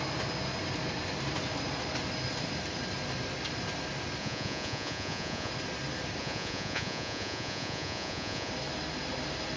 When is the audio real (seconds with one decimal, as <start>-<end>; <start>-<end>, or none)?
0.0-4.2; 5.5-6.2; 8.5-9.6